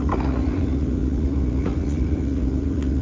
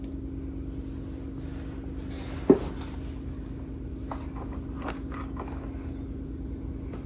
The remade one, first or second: first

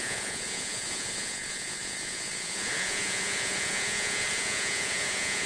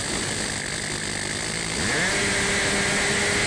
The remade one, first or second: first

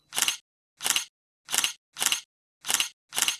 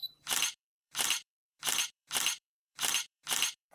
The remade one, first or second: second